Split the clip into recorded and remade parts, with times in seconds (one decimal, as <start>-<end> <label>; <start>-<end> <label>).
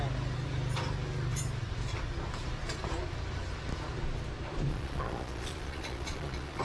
0.0-4.7 recorded; 4.7-6.6 remade